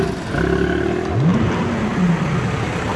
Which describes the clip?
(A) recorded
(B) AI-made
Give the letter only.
A